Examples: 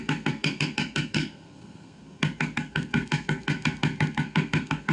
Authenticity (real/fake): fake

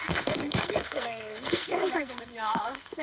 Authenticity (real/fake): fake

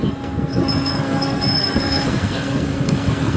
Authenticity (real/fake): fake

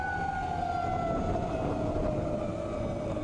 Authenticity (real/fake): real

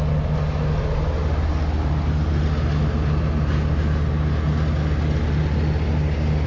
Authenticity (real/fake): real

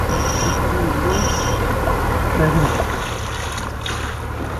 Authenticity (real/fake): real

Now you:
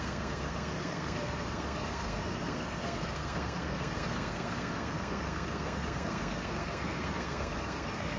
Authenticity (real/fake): fake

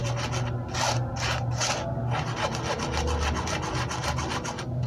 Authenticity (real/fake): real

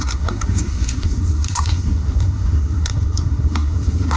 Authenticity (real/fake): fake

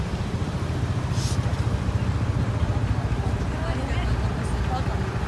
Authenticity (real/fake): real